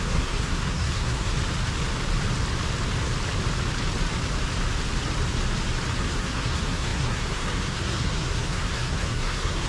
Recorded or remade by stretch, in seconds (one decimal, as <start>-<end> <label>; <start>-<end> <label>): 0.0-1.3 remade; 1.3-6.0 recorded; 6.0-9.7 remade